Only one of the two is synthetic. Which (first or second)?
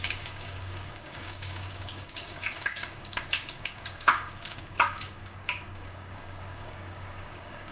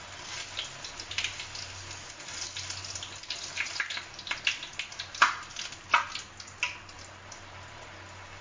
first